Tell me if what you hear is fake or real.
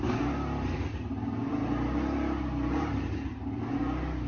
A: real